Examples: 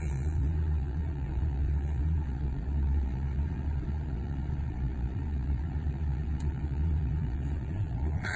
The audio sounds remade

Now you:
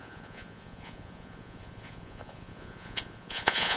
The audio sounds remade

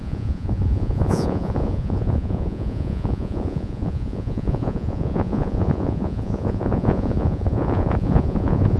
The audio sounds remade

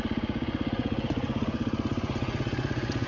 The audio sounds remade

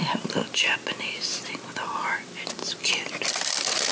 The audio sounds recorded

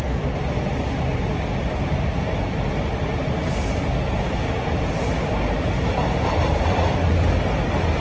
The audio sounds recorded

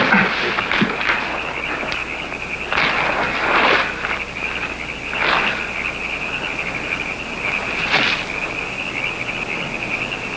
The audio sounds recorded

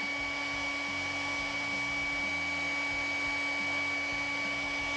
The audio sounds recorded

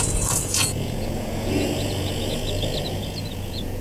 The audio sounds remade